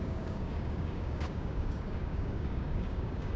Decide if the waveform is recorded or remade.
remade